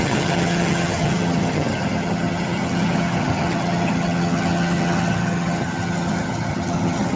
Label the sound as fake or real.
fake